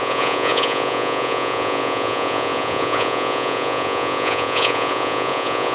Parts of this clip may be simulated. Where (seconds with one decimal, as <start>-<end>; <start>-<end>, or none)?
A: 0.0-5.7